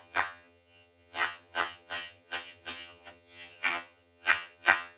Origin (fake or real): fake